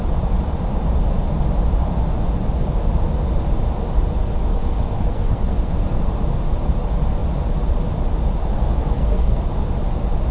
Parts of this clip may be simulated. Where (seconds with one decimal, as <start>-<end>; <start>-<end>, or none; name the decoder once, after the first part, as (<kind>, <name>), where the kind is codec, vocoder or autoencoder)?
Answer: 4.5-6.1 (codec, SNAC); 8.5-9.4